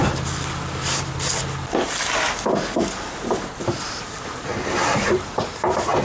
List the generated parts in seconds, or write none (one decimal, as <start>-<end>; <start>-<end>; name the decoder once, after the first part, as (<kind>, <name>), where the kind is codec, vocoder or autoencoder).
3.6-6.0 (vocoder, BigVGAN v2)

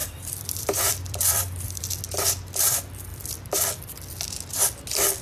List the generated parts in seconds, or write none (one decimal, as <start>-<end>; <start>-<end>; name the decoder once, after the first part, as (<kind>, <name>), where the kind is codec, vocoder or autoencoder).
0.0-1.8 (vocoder, BigVGAN v2); 3.1-3.7

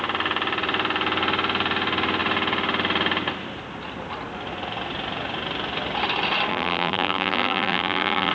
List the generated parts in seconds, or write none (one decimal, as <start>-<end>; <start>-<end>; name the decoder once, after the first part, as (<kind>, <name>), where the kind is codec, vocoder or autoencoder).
6.5-8.3 (vocoder, BigVGAN v2)

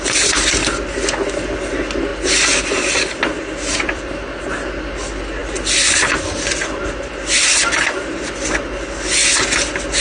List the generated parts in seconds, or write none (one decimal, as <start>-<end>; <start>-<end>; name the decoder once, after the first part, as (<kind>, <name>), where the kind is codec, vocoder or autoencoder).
2.1-4.4 (vocoder, BigVGAN v2)